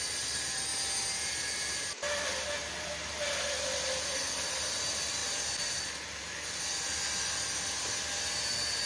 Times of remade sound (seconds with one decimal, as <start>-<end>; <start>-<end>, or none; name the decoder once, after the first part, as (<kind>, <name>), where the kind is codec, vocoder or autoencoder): none

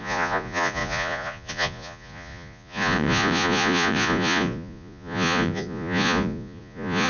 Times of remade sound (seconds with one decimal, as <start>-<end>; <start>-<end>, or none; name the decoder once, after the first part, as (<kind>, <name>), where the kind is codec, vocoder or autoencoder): 0.0-7.1 (vocoder, Vocos)

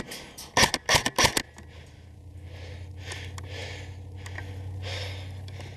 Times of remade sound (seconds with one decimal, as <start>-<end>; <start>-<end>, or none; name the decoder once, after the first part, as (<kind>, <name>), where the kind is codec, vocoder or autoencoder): none